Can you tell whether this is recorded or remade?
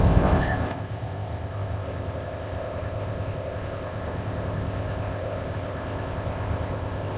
remade